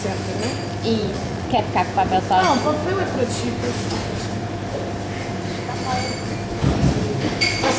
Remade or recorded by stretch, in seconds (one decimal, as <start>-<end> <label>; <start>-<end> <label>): 0.0-1.0 recorded; 1.0-1.6 remade; 1.6-7.8 recorded